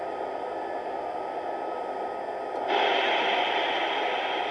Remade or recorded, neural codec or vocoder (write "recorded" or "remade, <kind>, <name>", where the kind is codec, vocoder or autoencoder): recorded